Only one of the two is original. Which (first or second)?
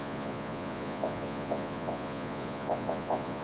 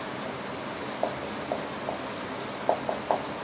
second